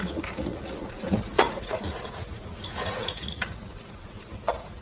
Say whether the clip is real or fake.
fake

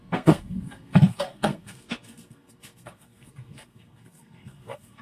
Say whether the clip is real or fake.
fake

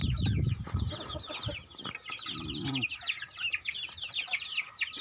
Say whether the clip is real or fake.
real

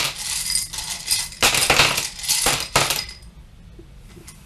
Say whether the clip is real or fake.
real